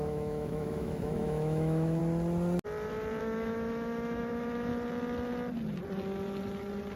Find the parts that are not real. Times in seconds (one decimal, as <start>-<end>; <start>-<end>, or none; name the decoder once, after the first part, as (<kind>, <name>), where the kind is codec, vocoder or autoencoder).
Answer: 0.0-2.0 (autoencoder, DAC-VAE); 3.2-4.7